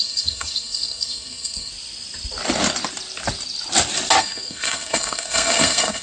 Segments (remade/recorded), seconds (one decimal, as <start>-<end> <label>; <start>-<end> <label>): 0.0-1.7 remade; 1.7-4.2 recorded; 4.2-6.0 remade

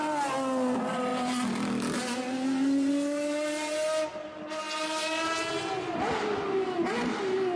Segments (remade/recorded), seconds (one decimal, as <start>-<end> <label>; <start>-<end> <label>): 0.0-7.6 recorded

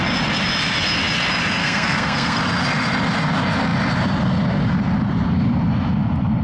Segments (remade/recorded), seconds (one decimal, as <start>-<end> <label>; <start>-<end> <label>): 0.0-1.6 recorded; 1.6-2.4 remade; 2.4-6.4 recorded

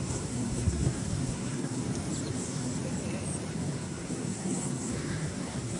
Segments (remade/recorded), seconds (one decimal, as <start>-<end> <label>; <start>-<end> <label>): 0.0-1.8 remade; 1.8-2.3 recorded; 2.3-2.7 remade; 2.7-3.5 recorded; 3.5-5.8 remade

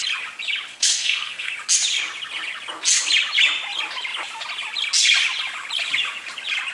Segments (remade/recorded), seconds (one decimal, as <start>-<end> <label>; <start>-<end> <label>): 0.0-0.7 recorded; 0.7-1.5 remade; 1.5-6.7 recorded

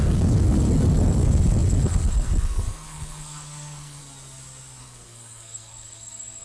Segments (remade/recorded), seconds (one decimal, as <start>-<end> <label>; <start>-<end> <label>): 0.0-4.0 remade; 4.0-4.8 recorded; 4.8-6.4 remade

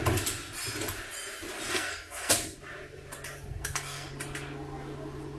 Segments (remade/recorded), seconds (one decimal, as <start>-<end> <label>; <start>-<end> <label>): 0.0-1.7 recorded; 1.7-2.3 remade; 2.3-3.5 recorded; 3.5-4.1 remade; 4.1-5.4 recorded

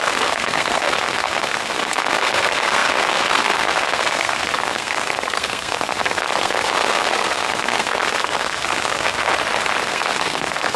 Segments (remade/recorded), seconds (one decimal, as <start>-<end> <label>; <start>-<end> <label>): 0.0-9.3 remade; 9.3-9.8 recorded; 9.8-10.8 remade